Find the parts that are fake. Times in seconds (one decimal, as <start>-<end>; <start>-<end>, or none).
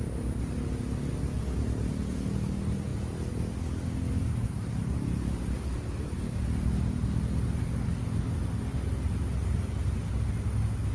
none